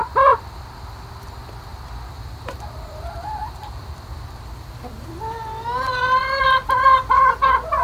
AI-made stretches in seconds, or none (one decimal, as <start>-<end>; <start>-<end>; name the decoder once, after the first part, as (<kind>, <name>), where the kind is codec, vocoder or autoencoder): 0.0-0.7 (vocoder, BigVGAN v2); 1.7-4.7; 6.2-6.8